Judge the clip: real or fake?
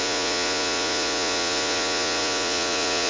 fake